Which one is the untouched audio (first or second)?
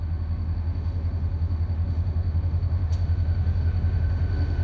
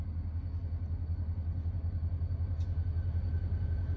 second